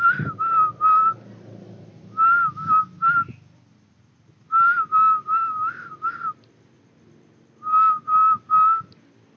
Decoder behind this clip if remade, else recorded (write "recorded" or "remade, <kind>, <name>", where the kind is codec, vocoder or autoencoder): recorded